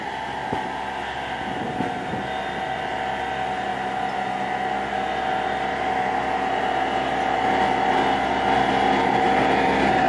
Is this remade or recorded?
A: recorded